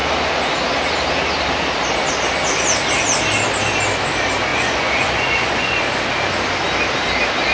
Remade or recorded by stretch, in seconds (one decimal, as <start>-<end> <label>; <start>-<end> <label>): 0.0-4.5 recorded; 4.5-5.8 remade; 5.8-7.5 recorded